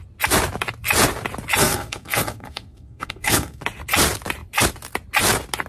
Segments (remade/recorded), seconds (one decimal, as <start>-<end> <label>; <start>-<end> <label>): 0.0-1.6 recorded; 1.6-3.6 remade; 3.6-5.7 recorded